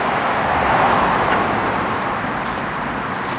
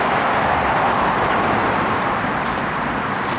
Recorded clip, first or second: first